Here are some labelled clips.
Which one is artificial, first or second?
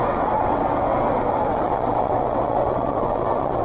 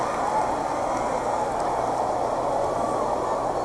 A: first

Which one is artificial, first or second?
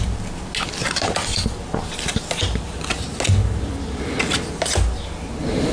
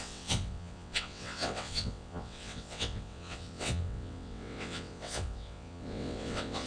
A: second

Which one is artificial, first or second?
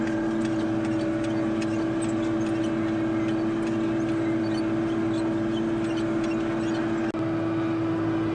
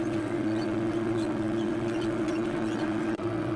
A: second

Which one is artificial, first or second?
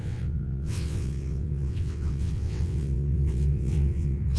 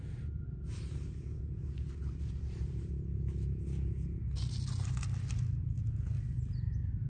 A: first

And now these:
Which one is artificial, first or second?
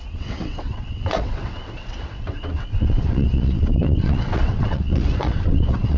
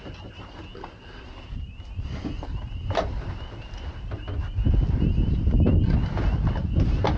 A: first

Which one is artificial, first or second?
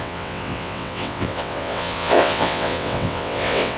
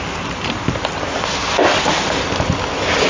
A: first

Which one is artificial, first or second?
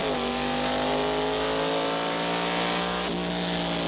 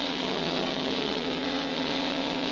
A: second